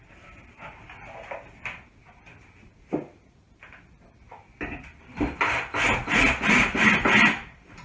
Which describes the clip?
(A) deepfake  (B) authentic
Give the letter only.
B